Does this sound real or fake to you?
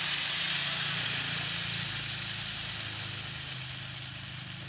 real